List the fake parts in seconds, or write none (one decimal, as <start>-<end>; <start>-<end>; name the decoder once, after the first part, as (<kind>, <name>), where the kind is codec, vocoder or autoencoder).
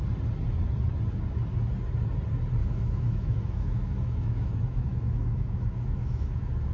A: 2.6-6.7 (autoencoder, DAC-VAE)